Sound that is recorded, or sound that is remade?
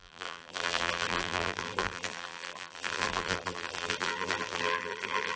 remade